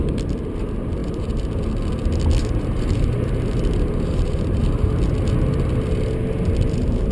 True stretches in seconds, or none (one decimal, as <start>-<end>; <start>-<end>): 0.0-1.0; 1.5-2.4; 4.9-7.1